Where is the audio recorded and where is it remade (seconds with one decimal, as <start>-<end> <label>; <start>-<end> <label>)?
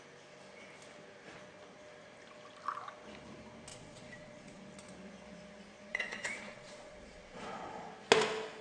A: 0.0-3.7 recorded; 3.7-4.6 remade; 4.6-5.9 recorded; 5.9-7.9 remade; 7.9-8.6 recorded